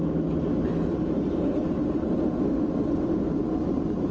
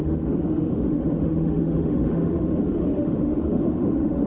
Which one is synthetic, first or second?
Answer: second